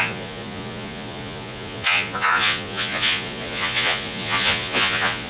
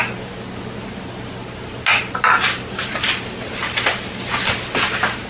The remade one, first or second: first